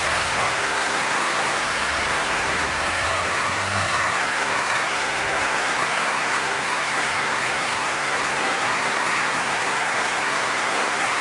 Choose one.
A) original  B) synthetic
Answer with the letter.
B